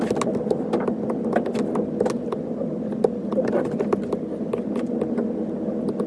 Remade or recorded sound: recorded